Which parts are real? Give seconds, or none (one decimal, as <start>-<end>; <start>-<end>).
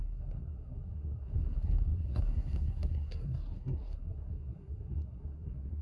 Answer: none